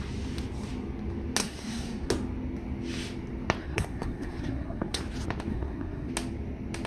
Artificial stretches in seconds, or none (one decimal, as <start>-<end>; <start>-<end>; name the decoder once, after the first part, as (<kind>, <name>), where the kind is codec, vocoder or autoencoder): 1.4-2.1 (codec, SNAC); 3.6-5.0; 5.5-6.1